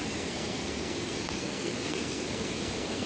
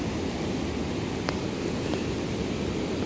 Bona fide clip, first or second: second